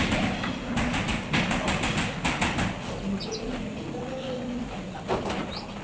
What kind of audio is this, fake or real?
real